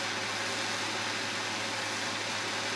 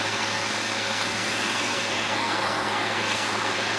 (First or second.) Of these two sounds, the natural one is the first